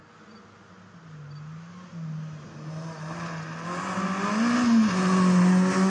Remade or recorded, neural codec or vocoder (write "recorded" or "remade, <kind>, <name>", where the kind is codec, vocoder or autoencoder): recorded